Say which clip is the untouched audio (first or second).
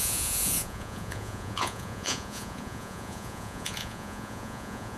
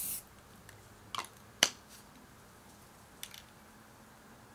second